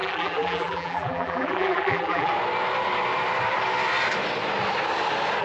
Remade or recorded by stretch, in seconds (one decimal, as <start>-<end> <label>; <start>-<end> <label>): 0.0-2.3 remade; 2.3-5.4 recorded